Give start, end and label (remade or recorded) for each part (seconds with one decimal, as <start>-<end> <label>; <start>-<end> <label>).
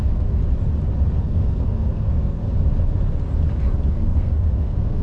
0.0-0.4 remade; 0.4-1.2 recorded; 1.2-2.4 remade; 2.4-3.9 recorded; 3.9-5.0 remade